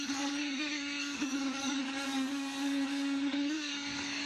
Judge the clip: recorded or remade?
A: remade